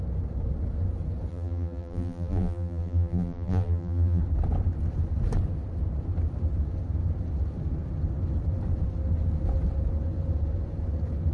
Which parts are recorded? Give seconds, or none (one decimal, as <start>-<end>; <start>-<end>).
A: 0.0-1.3; 4.2-11.3